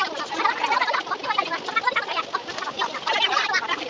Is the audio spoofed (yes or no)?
no